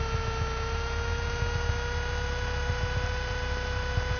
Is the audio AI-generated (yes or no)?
no